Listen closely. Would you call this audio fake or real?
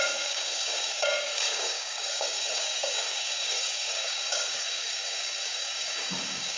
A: fake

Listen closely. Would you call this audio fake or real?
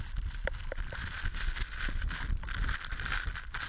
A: real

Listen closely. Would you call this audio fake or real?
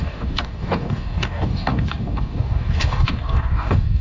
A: fake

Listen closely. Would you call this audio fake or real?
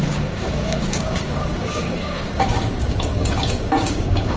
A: fake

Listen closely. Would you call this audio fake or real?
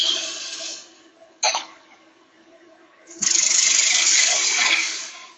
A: fake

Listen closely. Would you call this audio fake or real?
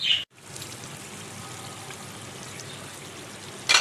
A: real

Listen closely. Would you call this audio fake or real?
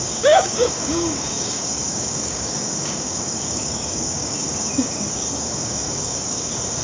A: fake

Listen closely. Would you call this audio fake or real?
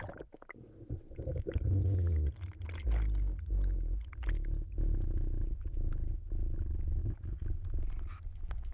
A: real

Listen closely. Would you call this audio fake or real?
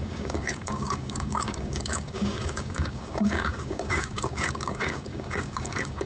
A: fake